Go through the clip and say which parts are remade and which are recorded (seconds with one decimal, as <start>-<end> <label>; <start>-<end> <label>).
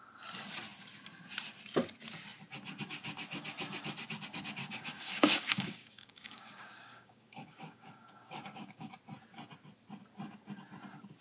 0.0-4.6 recorded; 4.6-8.9 remade; 8.9-11.2 recorded